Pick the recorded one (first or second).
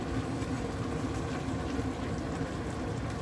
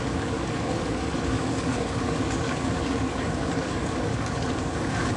first